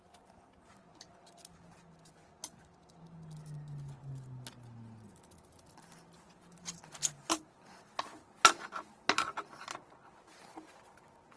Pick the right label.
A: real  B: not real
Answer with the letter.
A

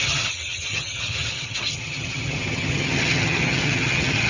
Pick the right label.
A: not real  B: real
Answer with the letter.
A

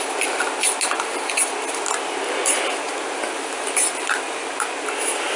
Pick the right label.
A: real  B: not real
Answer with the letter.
A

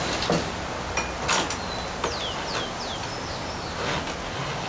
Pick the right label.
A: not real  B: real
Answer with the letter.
B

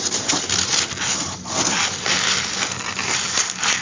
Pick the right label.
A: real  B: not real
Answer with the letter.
A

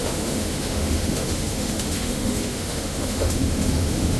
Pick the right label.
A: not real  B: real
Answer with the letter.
A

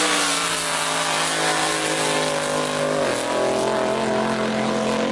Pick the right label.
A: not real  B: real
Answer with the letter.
B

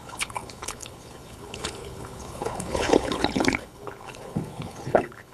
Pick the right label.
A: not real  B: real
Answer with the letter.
A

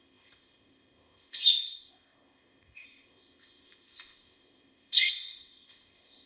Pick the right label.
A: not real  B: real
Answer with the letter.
A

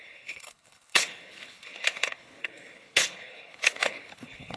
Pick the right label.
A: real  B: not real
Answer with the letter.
B